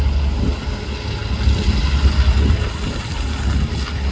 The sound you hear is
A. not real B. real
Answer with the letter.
B